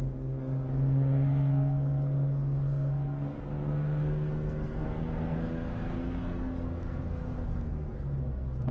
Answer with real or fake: fake